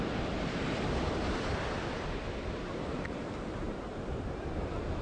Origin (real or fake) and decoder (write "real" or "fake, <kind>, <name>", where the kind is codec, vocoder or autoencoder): fake, vocoder, BigVGAN v2